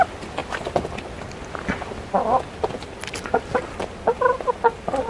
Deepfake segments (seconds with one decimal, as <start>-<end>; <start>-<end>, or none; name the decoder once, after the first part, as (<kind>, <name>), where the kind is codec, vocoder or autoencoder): none